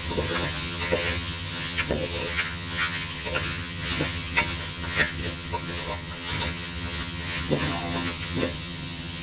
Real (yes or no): no